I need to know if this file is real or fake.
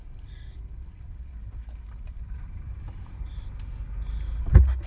real